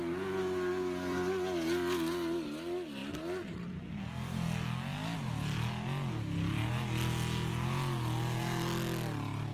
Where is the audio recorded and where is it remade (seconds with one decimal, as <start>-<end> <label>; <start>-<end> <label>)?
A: 0.0-9.5 recorded